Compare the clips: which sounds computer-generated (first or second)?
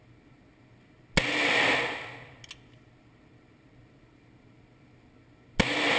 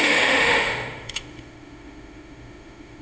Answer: second